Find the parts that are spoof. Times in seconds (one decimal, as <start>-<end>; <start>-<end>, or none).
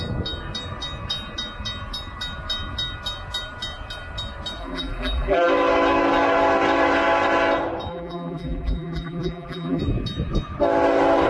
4.6-5.5; 7.9-9.8